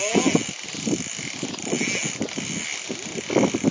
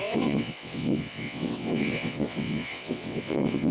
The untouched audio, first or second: first